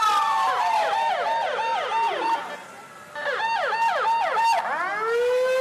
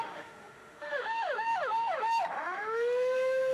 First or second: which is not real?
second